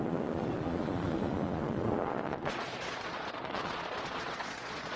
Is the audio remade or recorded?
remade